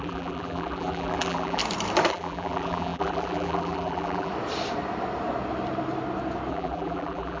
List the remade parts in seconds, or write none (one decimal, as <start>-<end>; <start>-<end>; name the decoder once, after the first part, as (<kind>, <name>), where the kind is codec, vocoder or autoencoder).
0.0-1.6 (vocoder, BigVGAN v2); 2.1-4.3; 6.5-7.4